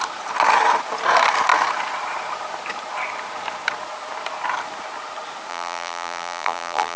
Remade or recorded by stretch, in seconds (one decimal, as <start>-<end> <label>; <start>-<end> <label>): 0.0-5.5 recorded; 5.5-7.0 remade